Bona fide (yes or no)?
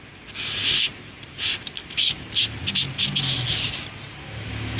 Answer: yes